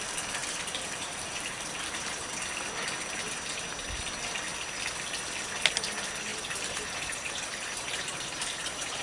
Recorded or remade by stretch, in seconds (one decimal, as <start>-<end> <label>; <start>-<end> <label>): 0.0-0.4 recorded; 0.4-2.3 remade; 2.3-6.3 recorded; 6.3-9.0 remade